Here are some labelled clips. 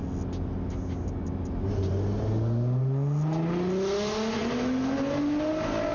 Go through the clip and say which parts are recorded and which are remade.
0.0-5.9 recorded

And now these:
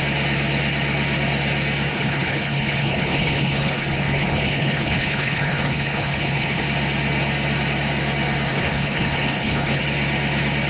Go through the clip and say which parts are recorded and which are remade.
0.0-1.9 recorded; 1.9-6.6 remade; 6.6-8.5 recorded; 8.5-9.8 remade; 9.8-10.7 recorded

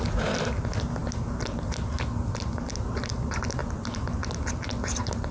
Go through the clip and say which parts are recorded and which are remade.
0.0-5.3 recorded

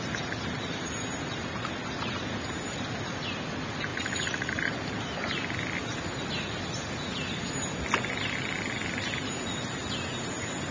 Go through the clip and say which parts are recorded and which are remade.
0.0-3.9 recorded; 3.9-4.5 remade; 4.5-10.7 recorded

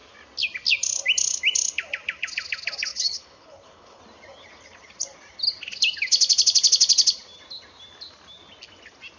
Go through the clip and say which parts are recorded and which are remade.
0.0-2.9 recorded; 2.9-4.0 remade; 4.0-9.2 recorded